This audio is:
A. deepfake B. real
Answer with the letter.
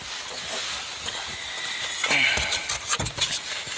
B